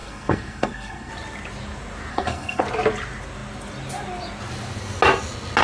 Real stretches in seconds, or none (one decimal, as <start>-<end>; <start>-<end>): 1.1-2.1; 2.6-5.6

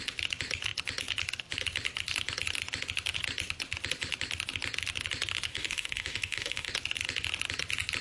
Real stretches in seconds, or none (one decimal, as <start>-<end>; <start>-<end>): 0.0-5.5; 6.7-8.0